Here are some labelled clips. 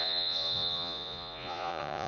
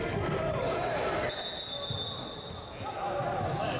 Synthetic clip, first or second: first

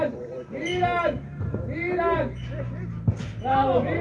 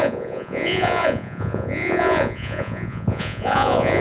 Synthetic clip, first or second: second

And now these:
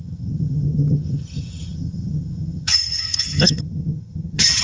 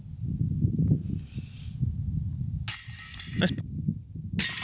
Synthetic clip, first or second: first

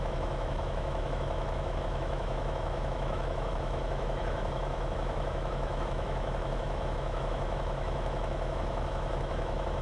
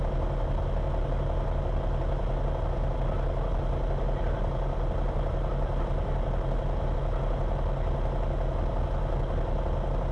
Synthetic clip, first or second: first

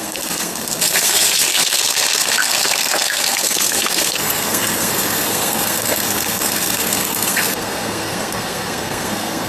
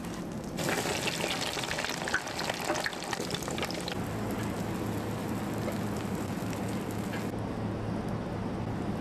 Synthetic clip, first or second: first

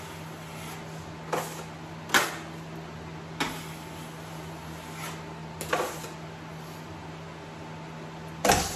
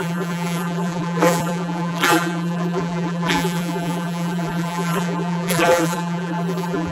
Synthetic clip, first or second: second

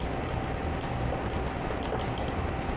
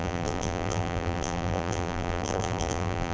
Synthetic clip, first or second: second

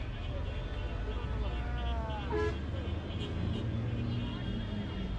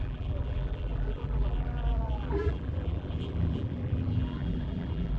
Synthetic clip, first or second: second